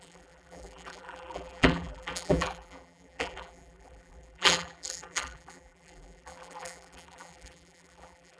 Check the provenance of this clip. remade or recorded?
remade